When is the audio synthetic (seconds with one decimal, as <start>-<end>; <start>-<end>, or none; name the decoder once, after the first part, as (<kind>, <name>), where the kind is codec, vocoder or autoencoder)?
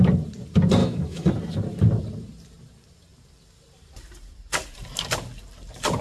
0.8-1.3 (autoencoder, DAC-VAE)